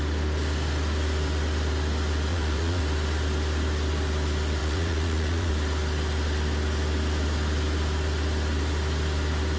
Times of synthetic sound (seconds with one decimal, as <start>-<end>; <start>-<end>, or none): 2.3-2.8; 4.6-5.5